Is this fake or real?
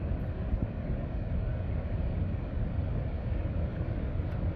fake